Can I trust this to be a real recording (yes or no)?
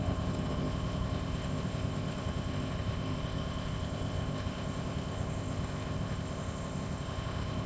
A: no